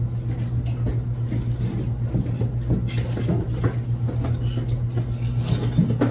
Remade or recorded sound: recorded